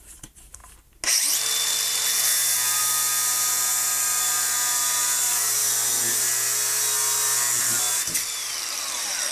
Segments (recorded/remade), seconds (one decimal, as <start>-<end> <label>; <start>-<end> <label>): 0.0-0.6 remade; 0.6-1.5 recorded; 1.5-5.6 remade; 5.6-7.6 recorded; 7.6-9.3 remade